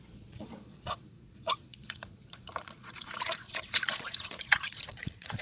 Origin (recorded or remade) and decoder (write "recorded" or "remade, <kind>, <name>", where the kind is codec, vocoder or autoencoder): remade, vocoder, Vocos